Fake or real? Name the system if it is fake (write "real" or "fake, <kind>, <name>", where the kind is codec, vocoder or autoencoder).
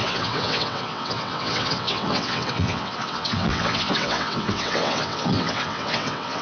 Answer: fake, vocoder, WaveNeXt